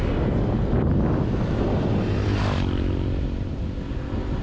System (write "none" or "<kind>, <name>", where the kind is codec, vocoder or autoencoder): none